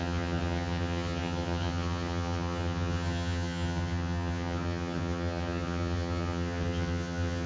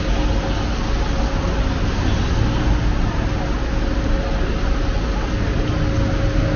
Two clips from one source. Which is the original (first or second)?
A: second